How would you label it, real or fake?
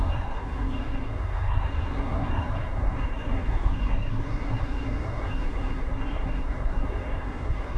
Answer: fake